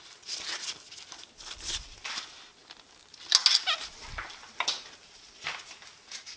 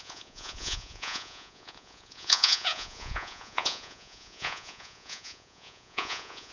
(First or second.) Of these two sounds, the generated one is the second